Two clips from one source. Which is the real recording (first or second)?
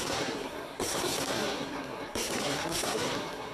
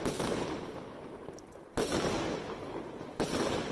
second